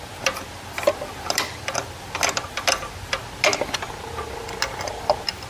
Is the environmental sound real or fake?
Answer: real